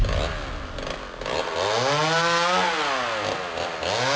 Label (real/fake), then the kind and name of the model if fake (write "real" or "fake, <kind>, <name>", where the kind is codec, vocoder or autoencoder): real